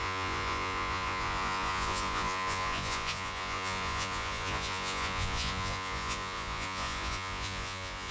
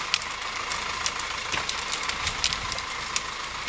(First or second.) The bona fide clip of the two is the second